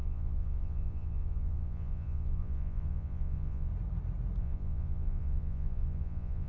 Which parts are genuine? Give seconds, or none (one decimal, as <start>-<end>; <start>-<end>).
3.7-4.4